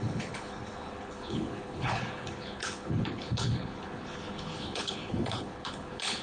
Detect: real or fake fake